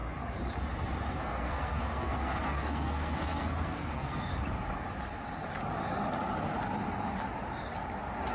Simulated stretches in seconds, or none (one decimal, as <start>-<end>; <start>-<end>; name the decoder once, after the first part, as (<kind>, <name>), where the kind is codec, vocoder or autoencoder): 1.1-4.3 (codec, SNAC)